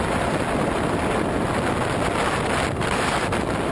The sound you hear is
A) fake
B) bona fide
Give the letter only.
B